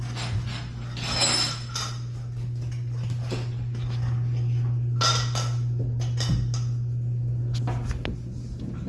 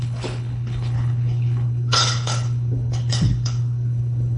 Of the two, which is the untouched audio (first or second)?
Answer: first